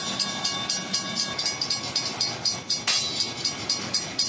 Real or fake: real